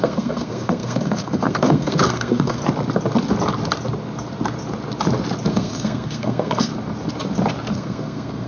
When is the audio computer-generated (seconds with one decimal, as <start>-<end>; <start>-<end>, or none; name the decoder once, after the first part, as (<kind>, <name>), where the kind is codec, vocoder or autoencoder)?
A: 0.0-2.6 (codec, SNAC); 5.5-6.7; 7.7-8.5